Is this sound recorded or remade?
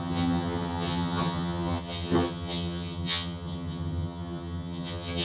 remade